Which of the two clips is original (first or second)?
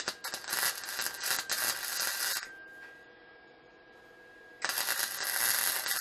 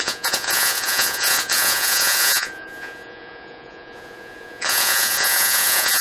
first